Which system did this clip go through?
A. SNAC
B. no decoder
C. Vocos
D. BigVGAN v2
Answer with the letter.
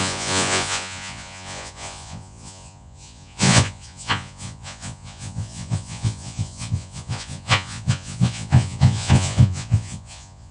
C